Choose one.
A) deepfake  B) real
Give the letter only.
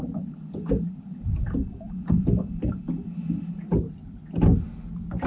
B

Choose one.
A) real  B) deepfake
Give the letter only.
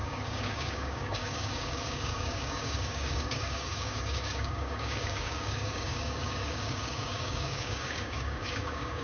B